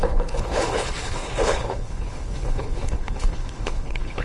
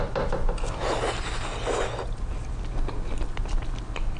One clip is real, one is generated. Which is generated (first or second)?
first